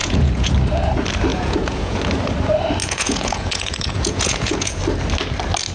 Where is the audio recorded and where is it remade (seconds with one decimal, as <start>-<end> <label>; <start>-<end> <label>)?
0.0-0.5 remade; 0.5-1.3 recorded; 1.3-2.0 remade; 2.0-2.8 recorded; 2.8-4.8 remade; 4.8-5.7 recorded